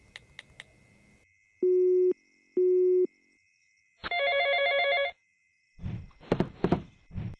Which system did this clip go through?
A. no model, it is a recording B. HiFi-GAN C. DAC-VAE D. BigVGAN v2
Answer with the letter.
A